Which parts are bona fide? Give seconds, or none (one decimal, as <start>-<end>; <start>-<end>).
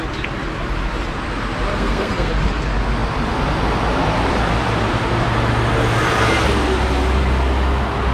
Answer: 0.0-1.7; 2.3-8.1